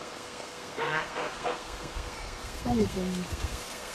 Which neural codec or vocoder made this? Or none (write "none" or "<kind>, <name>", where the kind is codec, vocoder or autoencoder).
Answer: codec, SNAC